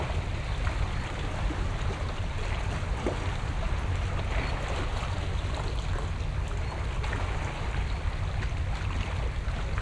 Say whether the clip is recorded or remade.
recorded